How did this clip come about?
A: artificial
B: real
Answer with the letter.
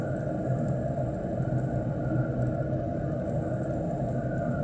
B